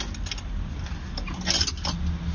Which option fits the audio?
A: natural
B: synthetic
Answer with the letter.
A